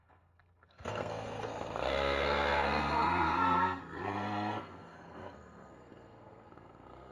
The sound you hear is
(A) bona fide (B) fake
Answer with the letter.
B